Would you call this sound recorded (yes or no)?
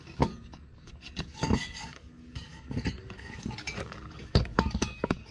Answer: no